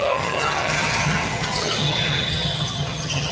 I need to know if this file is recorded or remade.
remade